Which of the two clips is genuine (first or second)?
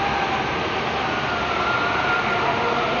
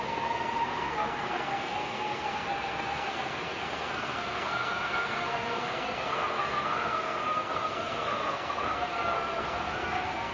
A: first